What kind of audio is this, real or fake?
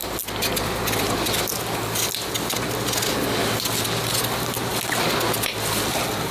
real